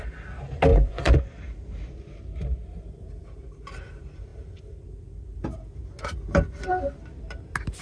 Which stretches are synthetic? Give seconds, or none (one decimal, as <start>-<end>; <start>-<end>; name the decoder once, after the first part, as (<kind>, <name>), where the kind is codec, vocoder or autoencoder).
0.7-1.2 (vocoder, Vocos)